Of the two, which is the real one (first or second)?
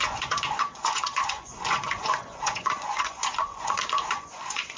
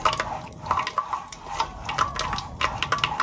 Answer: second